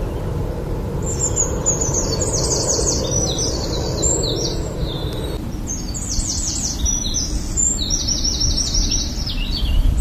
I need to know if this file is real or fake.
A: real